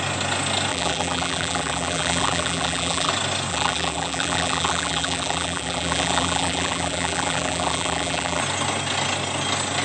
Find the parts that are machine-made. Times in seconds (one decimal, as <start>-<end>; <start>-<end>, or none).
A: 0.7-3.1; 3.5-8.4